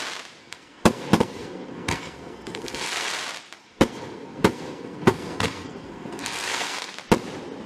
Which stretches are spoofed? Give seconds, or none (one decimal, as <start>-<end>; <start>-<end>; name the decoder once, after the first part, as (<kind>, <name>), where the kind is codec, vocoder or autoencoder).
0.4-3.1 (codec, SNAC); 3.6-6.9

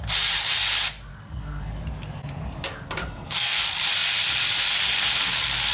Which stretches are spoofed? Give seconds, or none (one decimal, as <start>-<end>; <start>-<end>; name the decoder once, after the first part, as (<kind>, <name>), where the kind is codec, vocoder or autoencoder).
1.1-1.7 (codec, SNAC); 3.0-3.6

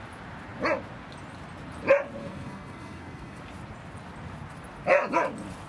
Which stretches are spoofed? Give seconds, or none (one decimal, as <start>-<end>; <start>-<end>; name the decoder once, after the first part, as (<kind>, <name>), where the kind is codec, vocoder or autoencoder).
2.2-3.4 (codec, SNAC)

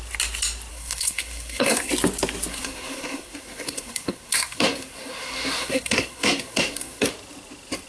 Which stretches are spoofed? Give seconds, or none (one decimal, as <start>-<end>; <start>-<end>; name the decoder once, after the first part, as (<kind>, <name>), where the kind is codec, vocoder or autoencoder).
0.7-1.9 (codec, SNAC); 2.5-7.1

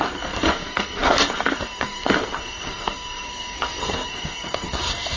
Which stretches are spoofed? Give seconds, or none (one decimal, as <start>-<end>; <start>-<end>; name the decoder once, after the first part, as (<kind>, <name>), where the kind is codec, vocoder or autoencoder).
0.0-5.2 (codec, SNAC)

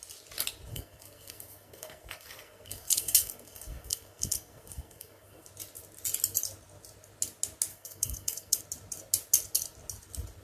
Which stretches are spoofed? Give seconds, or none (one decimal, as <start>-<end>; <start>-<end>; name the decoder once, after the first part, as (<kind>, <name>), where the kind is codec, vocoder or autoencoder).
0.7-5.5 (codec, SNAC); 7.7-8.6

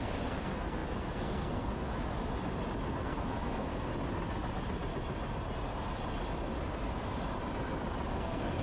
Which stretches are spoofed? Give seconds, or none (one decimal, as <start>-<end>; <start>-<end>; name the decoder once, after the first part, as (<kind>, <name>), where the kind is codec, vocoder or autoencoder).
0.0-1.9 (codec, SNAC); 3.0-3.9; 8.1-8.6

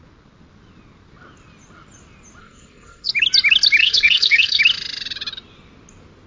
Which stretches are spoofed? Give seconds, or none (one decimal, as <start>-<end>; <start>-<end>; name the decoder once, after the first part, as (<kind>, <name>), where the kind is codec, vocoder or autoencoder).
2.4-3.1 (codec, SNAC); 3.8-4.6